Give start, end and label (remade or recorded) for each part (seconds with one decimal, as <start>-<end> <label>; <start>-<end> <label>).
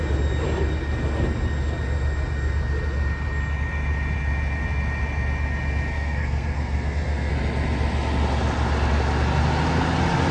0.0-5.9 recorded; 5.9-7.3 remade; 7.3-10.3 recorded